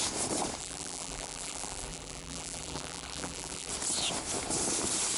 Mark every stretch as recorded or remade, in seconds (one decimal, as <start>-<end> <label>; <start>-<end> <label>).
0.0-0.6 recorded; 0.6-3.7 remade; 3.7-5.2 recorded